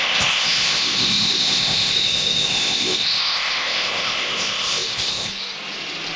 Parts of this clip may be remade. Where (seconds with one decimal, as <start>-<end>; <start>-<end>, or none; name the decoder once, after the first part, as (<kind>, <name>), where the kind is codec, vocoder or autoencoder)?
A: 0.0-5.3 (codec, ZipCodec)